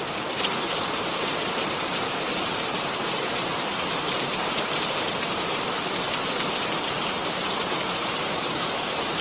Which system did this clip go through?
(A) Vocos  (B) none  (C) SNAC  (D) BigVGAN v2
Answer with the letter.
D